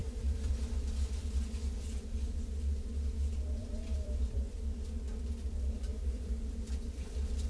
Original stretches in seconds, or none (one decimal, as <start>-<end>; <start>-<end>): 1.3-3.6; 4.5-5.9; 7.1-7.5